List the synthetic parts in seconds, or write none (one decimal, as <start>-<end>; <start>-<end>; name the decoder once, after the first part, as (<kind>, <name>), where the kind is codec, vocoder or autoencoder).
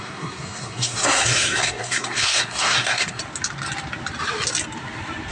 0.0-3.2 (codec, SNAC)